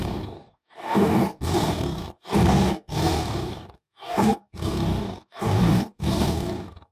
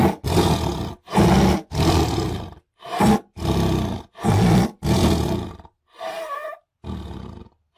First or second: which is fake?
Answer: first